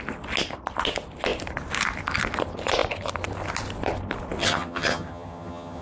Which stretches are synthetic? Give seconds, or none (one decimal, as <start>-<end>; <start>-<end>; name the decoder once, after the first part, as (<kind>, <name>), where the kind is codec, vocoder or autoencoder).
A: 4.4-5.8 (vocoder, HiFi-GAN)